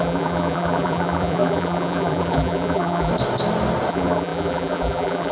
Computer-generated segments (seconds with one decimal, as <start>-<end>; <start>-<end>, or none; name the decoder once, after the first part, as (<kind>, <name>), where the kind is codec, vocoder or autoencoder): 0.0-3.1 (vocoder, BigVGAN v2); 3.9-5.3